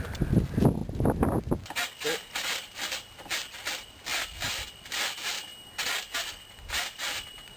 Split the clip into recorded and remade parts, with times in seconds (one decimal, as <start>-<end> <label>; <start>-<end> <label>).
0.0-0.8 remade; 0.8-2.2 recorded; 2.2-5.5 remade; 5.5-6.8 recorded; 6.8-7.6 remade